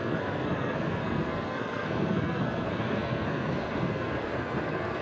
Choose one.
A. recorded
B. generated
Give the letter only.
B